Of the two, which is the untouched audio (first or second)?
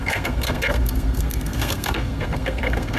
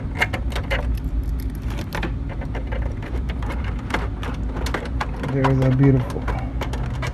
second